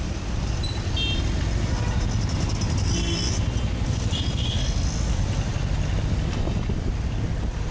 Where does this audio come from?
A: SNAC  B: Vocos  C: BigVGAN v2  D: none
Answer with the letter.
D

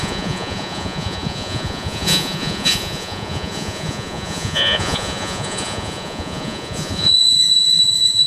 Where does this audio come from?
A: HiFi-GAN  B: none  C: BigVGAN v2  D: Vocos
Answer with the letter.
D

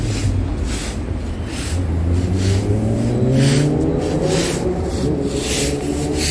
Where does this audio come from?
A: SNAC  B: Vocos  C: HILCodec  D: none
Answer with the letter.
D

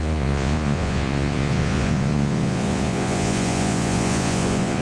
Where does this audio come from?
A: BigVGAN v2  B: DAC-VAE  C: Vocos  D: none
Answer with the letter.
C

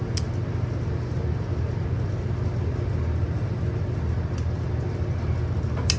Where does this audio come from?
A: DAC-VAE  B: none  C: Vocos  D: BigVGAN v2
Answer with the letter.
B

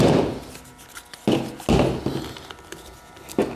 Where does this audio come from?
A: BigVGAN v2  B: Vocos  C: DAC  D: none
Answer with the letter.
D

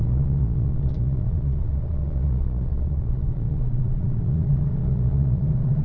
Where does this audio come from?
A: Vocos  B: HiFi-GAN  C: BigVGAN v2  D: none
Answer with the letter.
A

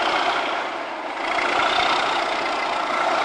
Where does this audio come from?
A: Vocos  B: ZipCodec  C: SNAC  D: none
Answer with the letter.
D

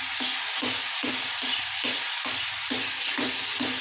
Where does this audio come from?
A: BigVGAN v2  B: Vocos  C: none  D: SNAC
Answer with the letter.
C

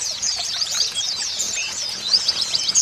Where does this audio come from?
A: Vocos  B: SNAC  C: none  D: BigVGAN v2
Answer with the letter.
A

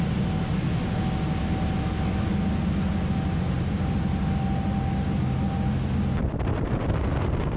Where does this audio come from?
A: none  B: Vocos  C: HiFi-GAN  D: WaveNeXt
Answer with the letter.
A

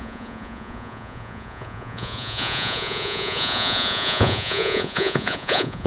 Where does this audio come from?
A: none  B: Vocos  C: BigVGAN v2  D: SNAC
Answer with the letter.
B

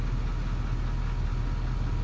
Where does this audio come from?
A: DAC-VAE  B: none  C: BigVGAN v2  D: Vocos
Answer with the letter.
B